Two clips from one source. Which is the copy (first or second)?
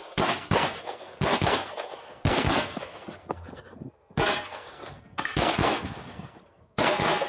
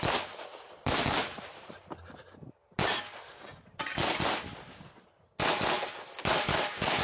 first